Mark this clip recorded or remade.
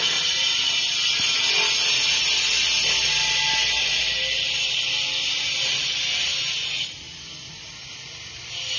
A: recorded